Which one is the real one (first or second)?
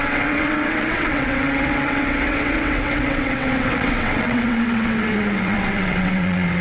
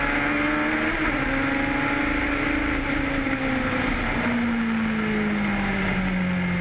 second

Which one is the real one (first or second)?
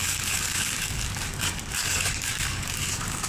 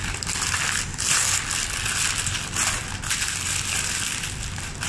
second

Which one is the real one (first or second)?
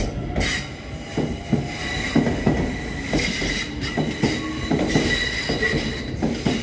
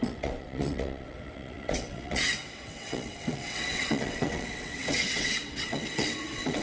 first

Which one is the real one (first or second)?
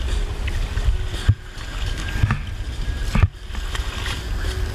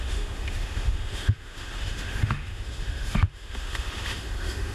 first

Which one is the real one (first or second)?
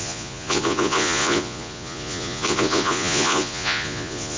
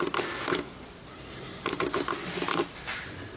second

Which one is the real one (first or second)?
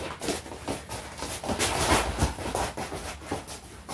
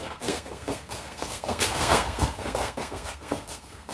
first